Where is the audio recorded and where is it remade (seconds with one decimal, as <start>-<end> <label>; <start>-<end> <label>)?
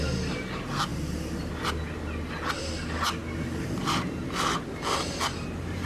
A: 0.0-0.9 recorded; 0.9-1.5 remade; 1.5-5.9 recorded